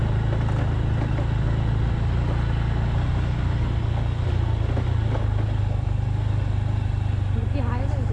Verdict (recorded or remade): recorded